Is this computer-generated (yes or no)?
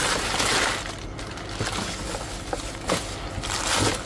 no